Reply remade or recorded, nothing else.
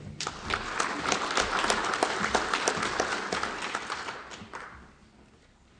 recorded